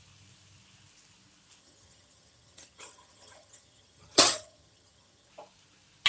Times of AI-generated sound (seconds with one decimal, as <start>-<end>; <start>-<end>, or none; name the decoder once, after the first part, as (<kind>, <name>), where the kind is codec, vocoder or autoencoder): 1.6-5.3 (vocoder, HiFi-GAN)

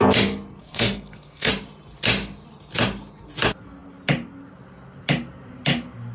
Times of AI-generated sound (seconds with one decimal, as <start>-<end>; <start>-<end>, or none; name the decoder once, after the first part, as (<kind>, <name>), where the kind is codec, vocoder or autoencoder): 0.6-1.5 (codec, SNAC)